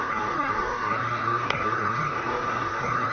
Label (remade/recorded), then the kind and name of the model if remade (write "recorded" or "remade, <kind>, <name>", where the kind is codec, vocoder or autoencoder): remade, codec, SNAC